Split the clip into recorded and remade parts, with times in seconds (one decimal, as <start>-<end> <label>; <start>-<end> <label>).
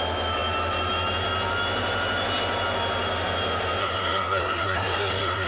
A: 0.0-3.8 recorded; 3.8-5.5 remade